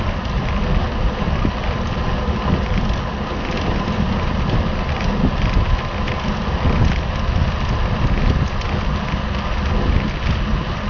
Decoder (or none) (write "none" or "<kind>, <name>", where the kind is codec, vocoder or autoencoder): none